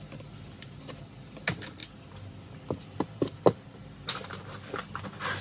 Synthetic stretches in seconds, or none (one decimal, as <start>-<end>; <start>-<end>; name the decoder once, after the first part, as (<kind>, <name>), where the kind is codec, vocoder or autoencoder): none